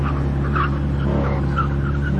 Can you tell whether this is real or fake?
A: real